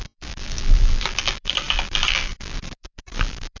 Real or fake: fake